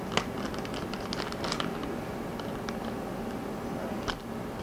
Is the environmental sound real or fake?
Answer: real